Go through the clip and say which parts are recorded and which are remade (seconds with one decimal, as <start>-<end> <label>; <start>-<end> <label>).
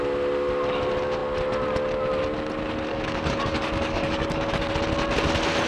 0.0-2.9 recorded; 2.9-4.7 remade; 4.7-5.7 recorded